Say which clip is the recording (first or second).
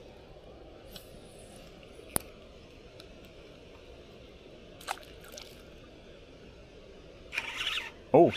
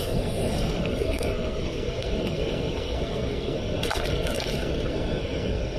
first